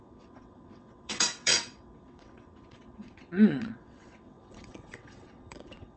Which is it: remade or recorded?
remade